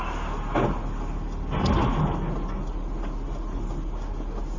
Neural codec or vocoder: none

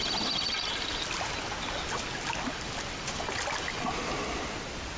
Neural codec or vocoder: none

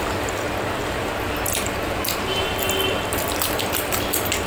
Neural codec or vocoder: none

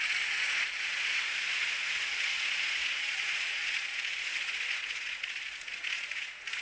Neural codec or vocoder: vocoder, Vocos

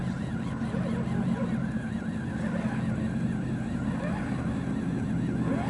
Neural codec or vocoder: none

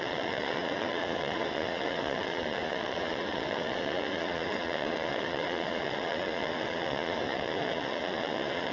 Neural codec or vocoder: vocoder, Vocos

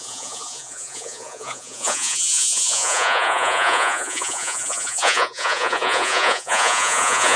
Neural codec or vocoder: vocoder, Vocos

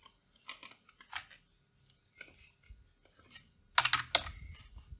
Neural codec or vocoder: none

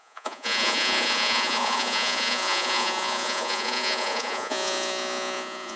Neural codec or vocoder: vocoder, Vocos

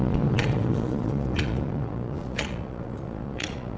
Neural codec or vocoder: vocoder, Vocos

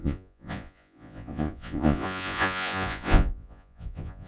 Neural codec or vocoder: vocoder, Vocos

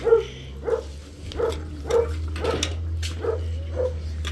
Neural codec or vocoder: none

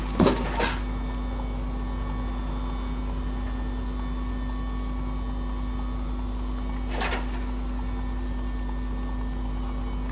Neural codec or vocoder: none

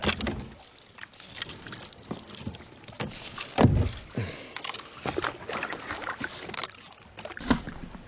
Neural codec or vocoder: none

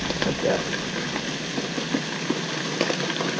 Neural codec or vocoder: none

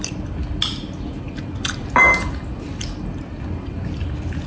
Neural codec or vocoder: none